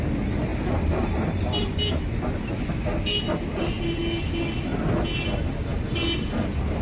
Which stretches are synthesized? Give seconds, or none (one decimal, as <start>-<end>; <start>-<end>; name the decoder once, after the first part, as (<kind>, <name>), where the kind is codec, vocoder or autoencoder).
none